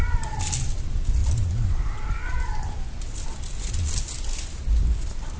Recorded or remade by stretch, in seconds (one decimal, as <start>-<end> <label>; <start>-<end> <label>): 0.0-5.4 recorded